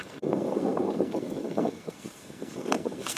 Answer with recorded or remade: remade